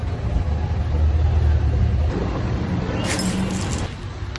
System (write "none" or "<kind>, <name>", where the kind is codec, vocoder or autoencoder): none